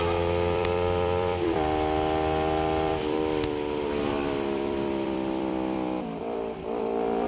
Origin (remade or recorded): remade